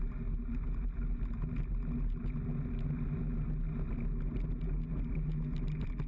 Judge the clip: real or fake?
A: real